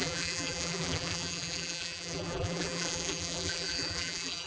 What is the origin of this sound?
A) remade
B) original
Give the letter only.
A